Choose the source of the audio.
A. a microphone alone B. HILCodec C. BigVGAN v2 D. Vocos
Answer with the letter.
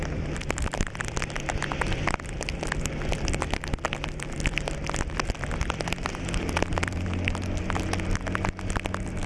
A